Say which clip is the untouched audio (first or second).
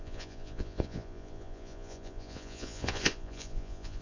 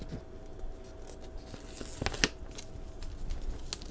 second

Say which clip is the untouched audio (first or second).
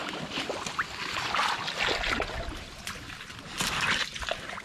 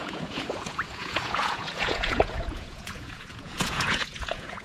first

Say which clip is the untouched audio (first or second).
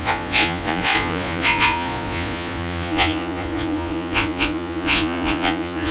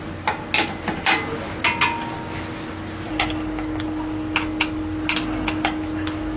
second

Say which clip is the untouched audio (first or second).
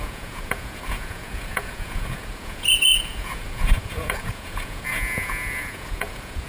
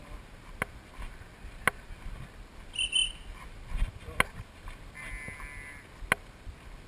second